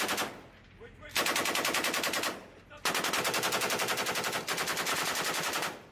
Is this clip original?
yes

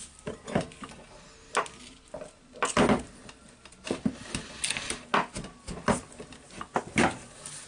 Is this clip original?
yes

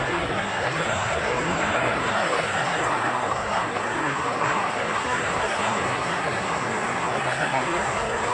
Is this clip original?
no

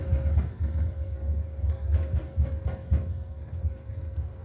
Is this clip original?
no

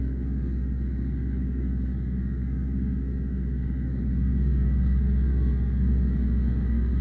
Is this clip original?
no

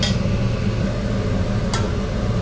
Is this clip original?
yes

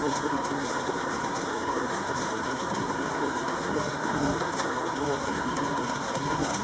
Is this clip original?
no